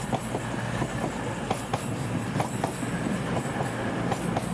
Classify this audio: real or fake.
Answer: real